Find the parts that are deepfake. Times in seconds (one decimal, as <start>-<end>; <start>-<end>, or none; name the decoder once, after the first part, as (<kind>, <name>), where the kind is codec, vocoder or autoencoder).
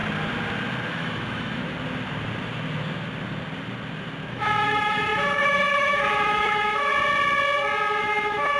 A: 0.9-1.6 (autoencoder, DAC-VAE); 4.3-6.9; 8.0-8.6